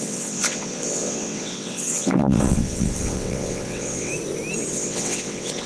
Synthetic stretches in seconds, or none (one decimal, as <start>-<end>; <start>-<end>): 0.0-4.1; 4.7-5.7